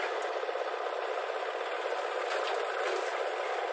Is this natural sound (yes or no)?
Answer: yes